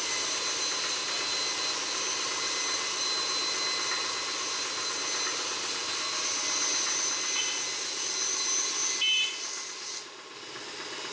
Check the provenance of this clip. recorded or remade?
recorded